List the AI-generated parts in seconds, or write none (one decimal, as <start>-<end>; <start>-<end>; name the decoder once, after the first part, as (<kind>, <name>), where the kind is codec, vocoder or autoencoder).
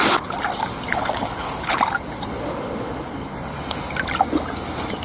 0.9-1.8 (codec, HILCodec)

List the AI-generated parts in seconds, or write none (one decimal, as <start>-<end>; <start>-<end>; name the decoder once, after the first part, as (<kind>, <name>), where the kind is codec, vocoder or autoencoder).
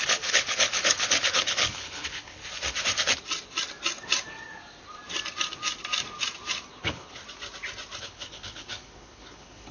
0.0-2.4 (codec, HILCodec); 6.7-7.2; 8.0-9.7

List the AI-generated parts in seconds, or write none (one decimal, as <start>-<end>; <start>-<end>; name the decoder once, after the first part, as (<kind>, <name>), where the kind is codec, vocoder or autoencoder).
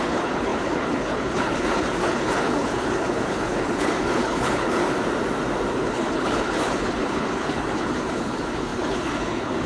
0.0-4.8 (codec, HILCodec); 5.8-9.7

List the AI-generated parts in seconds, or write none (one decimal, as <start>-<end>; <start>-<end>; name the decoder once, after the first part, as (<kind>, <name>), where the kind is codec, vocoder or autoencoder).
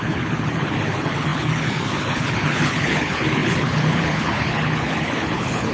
0.0-5.7 (codec, HILCodec)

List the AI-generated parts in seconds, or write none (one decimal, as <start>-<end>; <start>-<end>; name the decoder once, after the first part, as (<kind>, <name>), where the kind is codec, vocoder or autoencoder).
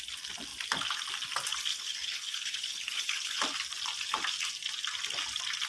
1.7-3.4 (codec, HILCodec)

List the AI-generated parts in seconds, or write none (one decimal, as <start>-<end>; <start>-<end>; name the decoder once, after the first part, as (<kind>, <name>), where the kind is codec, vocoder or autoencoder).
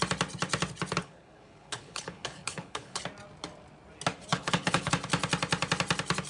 1.0-3.0 (codec, HILCodec); 4.3-4.9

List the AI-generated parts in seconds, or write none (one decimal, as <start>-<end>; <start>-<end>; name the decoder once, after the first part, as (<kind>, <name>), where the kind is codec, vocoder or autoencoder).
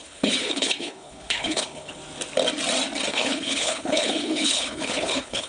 0.0-2.0 (codec, HILCodec); 3.1-5.5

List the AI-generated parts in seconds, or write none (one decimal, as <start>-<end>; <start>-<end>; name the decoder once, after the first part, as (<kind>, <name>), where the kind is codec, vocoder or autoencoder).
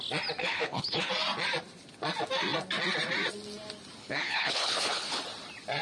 0.4-1.1 (codec, HILCodec); 4.0-5.2